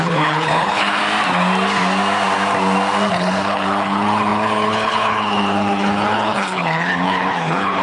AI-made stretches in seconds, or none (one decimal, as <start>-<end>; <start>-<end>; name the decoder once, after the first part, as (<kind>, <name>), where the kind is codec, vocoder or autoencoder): 0.0-1.0 (codec, HILCodec); 3.1-7.8